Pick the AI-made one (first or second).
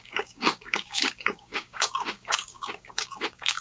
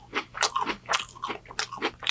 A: first